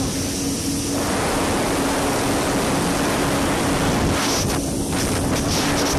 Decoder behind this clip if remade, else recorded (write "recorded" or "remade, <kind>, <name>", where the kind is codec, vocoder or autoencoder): recorded